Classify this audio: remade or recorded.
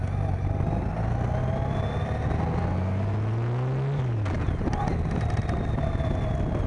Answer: recorded